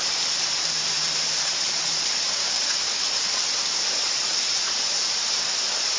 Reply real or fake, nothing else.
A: fake